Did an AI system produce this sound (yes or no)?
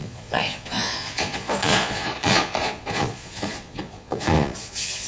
yes